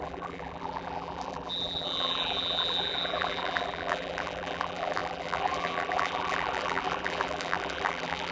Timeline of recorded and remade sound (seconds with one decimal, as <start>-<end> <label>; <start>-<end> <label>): 0.0-8.3 remade